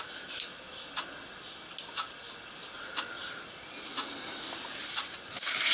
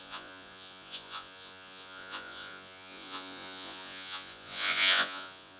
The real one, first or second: first